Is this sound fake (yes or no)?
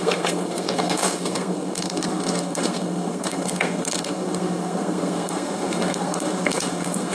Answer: yes